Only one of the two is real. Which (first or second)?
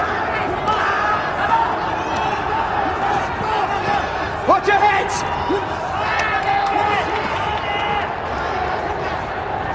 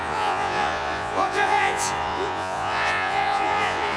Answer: first